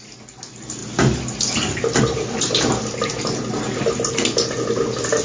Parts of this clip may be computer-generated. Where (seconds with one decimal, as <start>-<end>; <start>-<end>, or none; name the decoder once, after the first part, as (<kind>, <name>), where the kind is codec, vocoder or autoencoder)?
none